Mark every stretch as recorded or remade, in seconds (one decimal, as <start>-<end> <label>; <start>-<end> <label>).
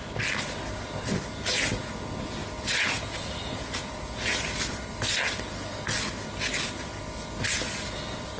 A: 0.0-2.4 recorded; 2.4-4.5 remade; 4.5-8.4 recorded